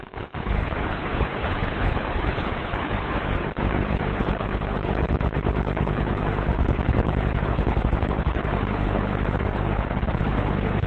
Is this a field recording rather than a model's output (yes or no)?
no